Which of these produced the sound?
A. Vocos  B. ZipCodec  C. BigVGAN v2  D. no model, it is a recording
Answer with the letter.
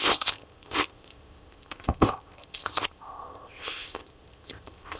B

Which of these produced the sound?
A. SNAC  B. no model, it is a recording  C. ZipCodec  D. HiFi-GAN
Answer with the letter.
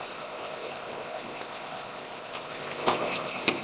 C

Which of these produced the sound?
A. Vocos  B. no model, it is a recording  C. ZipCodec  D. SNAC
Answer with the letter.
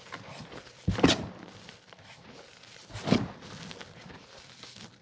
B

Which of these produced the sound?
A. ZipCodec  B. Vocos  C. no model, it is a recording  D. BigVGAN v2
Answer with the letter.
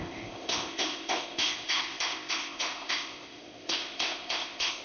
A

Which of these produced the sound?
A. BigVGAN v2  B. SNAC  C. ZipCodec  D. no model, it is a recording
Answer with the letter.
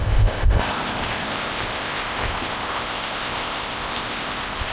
C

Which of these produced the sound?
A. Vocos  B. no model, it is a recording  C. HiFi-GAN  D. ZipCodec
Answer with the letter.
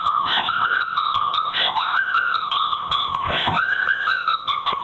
D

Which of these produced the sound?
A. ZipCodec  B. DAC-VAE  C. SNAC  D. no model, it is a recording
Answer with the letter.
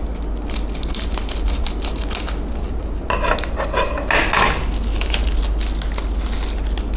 D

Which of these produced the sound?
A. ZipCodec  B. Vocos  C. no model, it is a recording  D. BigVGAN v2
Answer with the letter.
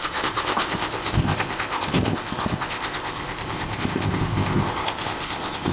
A